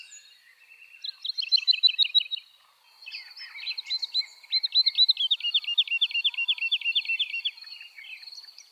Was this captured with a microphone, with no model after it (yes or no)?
yes